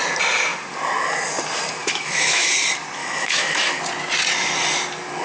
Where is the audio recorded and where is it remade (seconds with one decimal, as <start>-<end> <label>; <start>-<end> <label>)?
0.0-1.8 recorded; 1.8-2.5 remade; 2.5-3.0 recorded; 3.0-3.8 remade; 3.8-5.2 recorded